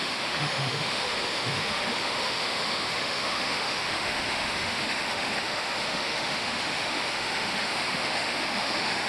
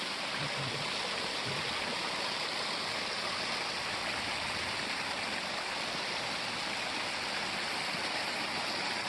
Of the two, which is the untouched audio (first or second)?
second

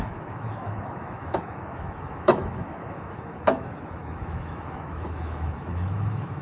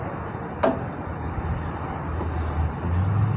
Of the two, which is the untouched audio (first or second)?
second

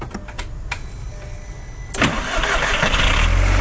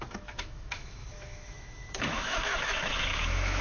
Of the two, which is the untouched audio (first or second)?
first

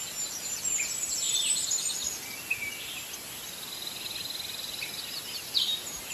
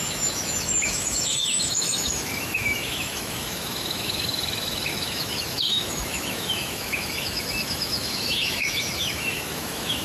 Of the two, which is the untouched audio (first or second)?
first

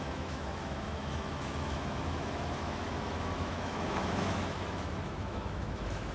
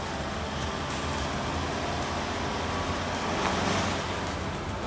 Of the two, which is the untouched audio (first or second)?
second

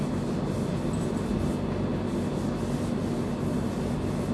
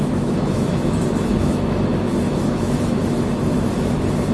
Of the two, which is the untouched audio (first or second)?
first